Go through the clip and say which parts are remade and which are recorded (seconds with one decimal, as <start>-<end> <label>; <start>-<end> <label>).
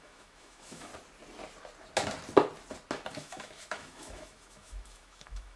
0.0-0.9 remade; 0.9-3.1 recorded; 3.1-5.6 remade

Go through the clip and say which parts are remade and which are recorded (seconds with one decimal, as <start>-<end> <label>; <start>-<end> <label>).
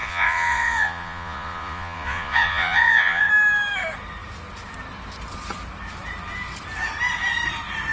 0.0-3.3 remade; 3.3-7.9 recorded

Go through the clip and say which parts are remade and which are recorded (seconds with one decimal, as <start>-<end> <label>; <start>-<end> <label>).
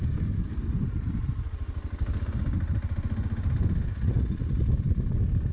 0.0-3.9 recorded; 3.9-4.6 remade; 4.6-5.5 recorded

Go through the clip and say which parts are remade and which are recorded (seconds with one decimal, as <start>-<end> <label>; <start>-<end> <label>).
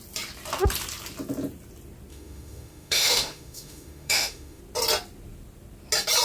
0.0-2.1 recorded; 2.1-4.6 remade; 4.6-6.2 recorded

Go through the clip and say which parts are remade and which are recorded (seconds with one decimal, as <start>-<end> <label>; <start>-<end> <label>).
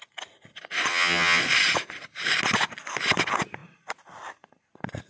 0.0-0.9 recorded; 0.9-1.4 remade; 1.4-5.1 recorded